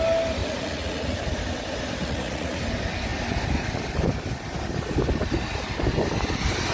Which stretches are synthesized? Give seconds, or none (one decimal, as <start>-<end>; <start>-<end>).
0.4-1.2; 2.0-2.6